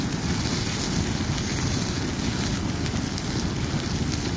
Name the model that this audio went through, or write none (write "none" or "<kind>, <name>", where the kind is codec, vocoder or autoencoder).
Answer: none